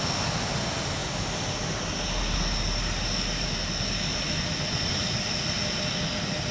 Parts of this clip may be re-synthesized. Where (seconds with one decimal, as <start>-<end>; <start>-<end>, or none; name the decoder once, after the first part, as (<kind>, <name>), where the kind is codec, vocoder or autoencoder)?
none